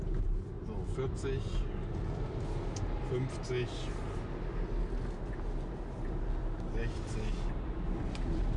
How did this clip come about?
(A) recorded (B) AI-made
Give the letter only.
A